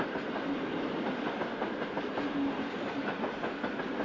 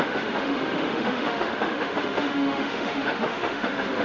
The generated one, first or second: second